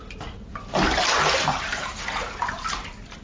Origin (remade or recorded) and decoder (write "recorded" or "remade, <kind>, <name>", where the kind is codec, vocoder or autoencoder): recorded